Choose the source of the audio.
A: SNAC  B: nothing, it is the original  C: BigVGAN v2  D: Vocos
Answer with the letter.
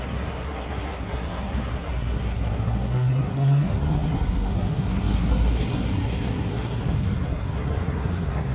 A